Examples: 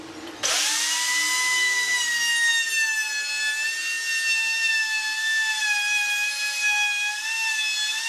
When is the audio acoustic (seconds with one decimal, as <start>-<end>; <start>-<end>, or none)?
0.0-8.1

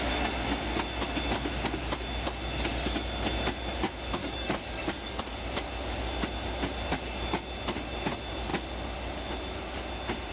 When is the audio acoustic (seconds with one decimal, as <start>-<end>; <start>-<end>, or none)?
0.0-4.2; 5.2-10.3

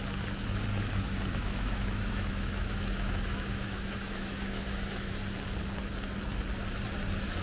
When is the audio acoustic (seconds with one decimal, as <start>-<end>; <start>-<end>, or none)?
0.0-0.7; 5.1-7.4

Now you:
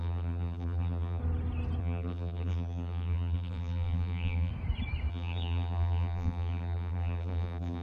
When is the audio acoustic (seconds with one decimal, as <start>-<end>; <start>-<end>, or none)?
1.2-1.8; 4.5-5.1

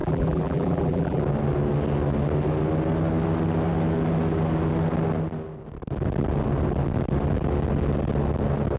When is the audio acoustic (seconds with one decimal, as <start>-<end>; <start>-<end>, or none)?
1.2-8.8